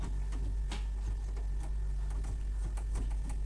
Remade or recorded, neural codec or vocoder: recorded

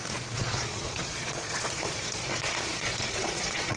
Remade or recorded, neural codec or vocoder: remade, vocoder, Vocos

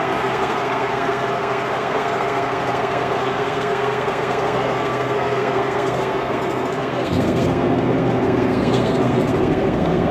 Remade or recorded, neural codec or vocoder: remade, codec, SNAC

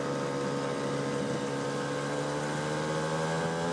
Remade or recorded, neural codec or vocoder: recorded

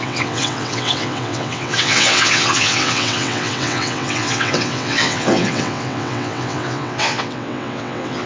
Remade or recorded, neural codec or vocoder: remade, vocoder, WaveNeXt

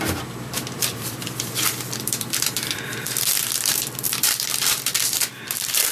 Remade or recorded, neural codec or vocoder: remade, vocoder, BigVGAN v2